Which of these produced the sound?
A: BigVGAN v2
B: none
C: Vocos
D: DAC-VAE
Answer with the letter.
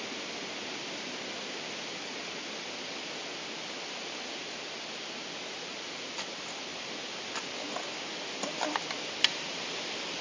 B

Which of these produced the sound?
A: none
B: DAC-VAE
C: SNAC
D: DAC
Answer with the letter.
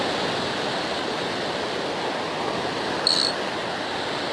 A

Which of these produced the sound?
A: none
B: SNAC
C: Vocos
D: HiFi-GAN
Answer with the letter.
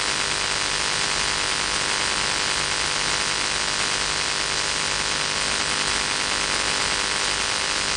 A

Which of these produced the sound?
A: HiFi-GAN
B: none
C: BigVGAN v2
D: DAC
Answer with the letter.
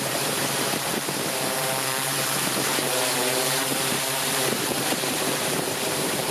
C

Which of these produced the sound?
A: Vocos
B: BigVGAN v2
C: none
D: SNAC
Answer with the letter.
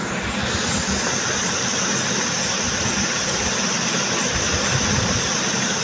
C